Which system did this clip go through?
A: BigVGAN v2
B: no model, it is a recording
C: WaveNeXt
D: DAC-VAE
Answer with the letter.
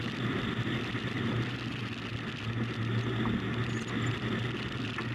B